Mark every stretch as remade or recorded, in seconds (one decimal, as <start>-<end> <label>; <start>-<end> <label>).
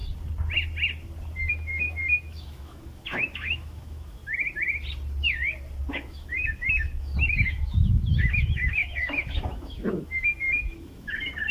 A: 0.0-1.5 recorded; 1.5-4.2 remade; 4.2-5.9 recorded; 5.9-11.5 remade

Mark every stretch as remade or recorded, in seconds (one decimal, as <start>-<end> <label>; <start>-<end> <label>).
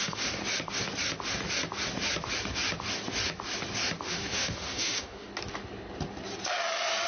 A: 0.0-0.4 remade; 0.4-4.1 recorded; 4.1-5.3 remade; 5.3-7.1 recorded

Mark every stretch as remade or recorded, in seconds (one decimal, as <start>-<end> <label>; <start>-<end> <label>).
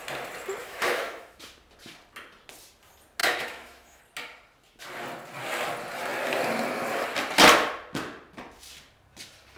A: 0.0-0.6 recorded; 0.6-1.4 remade; 1.4-3.2 recorded; 3.2-4.0 remade; 4.0-9.6 recorded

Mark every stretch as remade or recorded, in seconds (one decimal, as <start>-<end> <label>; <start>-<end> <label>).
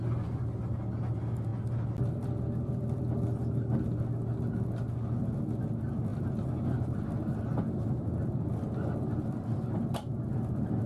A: 0.0-10.9 recorded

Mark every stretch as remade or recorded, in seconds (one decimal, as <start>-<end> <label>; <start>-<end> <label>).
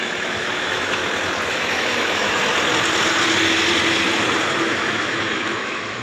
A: 0.0-1.0 remade; 1.0-1.5 recorded; 1.5-2.4 remade; 2.4-4.6 recorded; 4.6-6.0 remade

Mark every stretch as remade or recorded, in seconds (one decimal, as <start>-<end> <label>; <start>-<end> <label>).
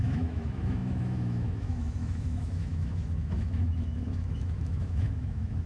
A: 0.0-5.7 remade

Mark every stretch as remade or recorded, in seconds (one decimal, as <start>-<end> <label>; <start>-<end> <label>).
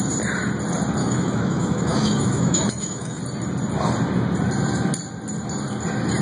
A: 0.0-1.0 recorded; 1.0-3.2 remade; 3.2-6.2 recorded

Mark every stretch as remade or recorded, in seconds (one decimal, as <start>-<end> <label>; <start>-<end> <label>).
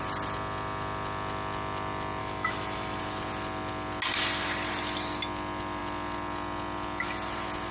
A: 0.0-2.2 recorded; 2.2-3.0 remade; 3.0-7.7 recorded